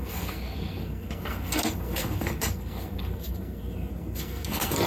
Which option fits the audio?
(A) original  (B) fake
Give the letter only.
B